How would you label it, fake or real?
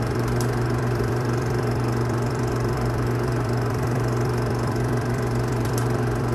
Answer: fake